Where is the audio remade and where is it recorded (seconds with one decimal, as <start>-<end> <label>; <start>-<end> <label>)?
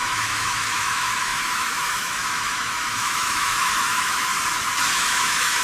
0.0-4.3 remade; 4.3-4.9 recorded; 4.9-5.6 remade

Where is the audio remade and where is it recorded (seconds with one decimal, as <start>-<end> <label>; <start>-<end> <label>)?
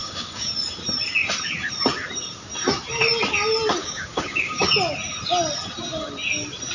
0.0-0.5 remade; 0.5-3.8 recorded; 3.8-4.6 remade; 4.6-6.7 recorded